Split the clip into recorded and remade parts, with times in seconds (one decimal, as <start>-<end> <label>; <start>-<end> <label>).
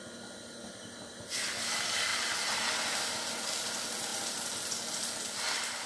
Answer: 0.0-5.9 recorded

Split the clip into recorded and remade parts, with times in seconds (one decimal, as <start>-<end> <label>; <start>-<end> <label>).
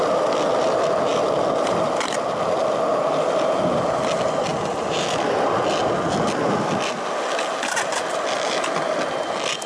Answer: 0.0-9.7 recorded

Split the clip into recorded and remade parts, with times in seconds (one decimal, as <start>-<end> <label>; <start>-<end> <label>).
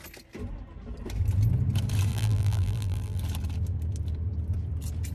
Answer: 0.0-2.1 recorded; 2.1-3.2 remade; 3.2-5.1 recorded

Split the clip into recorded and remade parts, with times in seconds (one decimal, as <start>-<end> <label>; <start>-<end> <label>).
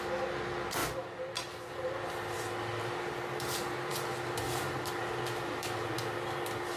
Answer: 0.0-6.8 recorded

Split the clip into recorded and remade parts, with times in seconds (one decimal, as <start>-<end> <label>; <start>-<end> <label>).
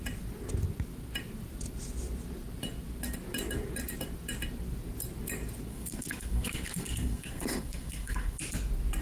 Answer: 0.0-5.7 recorded; 5.7-8.4 remade; 8.4-9.0 recorded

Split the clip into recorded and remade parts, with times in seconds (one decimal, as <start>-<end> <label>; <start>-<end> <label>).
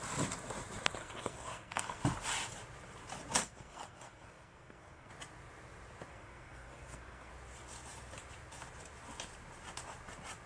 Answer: 0.0-1.0 recorded; 1.0-2.0 remade; 2.0-3.4 recorded; 3.4-5.1 remade; 5.1-6.1 recorded; 6.1-7.3 remade; 7.3-10.5 recorded